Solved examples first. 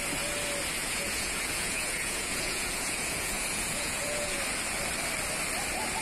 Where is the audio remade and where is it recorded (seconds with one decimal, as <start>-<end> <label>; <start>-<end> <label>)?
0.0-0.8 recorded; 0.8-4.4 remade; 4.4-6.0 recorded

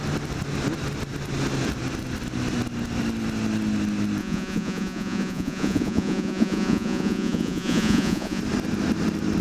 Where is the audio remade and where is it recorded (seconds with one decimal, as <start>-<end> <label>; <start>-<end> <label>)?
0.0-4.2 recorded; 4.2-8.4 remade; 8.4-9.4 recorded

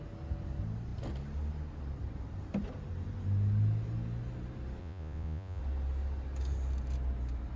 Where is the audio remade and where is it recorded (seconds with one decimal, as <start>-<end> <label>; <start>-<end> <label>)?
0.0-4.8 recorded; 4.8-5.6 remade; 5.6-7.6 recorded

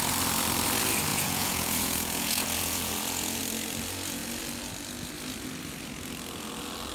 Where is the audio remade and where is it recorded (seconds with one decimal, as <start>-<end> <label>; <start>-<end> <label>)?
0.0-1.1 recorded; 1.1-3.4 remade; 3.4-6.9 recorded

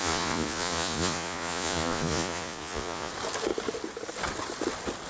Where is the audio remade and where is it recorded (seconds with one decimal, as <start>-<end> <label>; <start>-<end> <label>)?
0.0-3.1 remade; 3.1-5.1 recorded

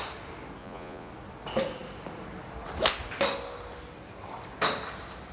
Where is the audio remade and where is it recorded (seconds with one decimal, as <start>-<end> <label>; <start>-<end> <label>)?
0.0-0.6 recorded; 0.6-1.1 remade; 1.1-5.3 recorded

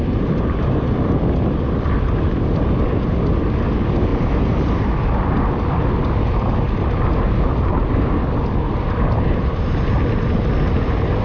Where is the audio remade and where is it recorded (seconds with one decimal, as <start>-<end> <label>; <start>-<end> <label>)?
0.0-11.2 recorded